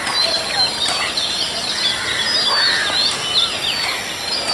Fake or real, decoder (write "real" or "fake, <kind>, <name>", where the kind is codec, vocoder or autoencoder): real